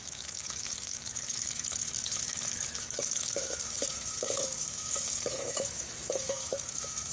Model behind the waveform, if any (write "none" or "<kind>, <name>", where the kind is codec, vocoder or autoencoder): autoencoder, DAC-VAE